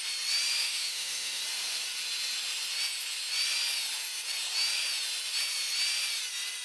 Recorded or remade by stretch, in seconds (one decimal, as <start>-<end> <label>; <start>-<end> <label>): 0.0-0.6 recorded; 0.6-1.4 remade; 1.4-6.6 recorded